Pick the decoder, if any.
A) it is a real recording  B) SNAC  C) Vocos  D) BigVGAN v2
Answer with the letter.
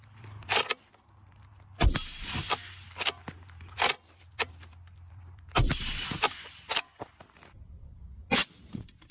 A